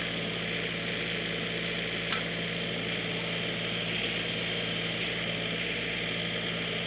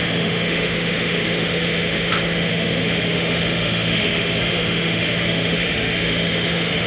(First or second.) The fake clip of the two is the second